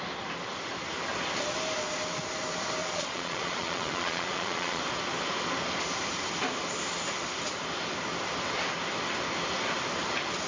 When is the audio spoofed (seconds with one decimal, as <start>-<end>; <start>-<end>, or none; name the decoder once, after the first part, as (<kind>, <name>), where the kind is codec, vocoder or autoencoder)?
2.8-4.8 (vocoder, Vocos)